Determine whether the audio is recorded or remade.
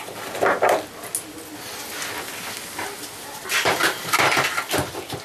recorded